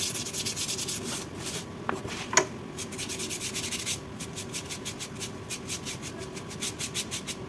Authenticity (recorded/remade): recorded